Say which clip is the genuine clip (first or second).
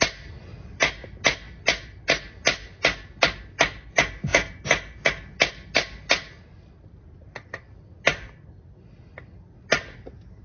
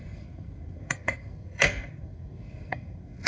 first